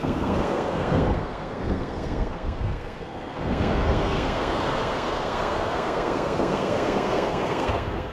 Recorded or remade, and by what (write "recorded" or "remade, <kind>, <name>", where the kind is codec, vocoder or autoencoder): remade, codec, SNAC